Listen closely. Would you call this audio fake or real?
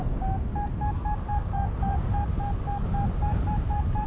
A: real